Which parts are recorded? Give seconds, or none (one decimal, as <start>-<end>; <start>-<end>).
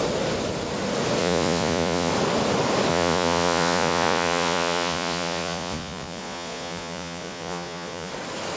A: 0.0-1.2; 2.1-2.9; 8.1-8.6